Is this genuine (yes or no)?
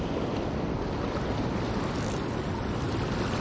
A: yes